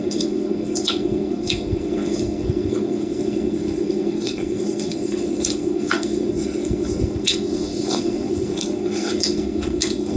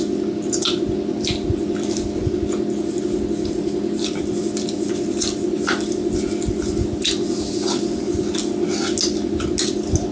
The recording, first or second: second